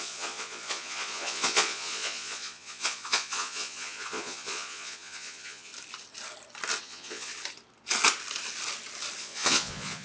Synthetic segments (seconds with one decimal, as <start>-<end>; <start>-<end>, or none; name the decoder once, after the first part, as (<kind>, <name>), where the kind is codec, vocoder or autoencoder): 0.0-5.7 (vocoder, Vocos); 6.8-7.3; 9.2-10.0